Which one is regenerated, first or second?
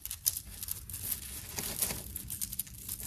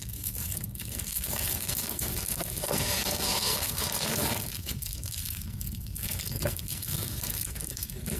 second